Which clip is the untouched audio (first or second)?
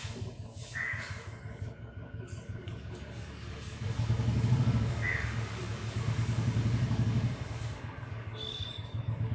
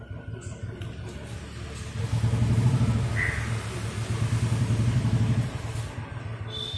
second